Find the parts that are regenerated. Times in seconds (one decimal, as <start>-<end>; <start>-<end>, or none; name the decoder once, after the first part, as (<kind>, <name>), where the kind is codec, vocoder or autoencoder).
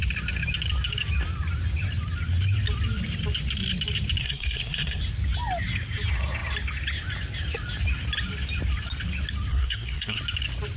4.2-5.0 (codec, SNAC); 9.5-10.2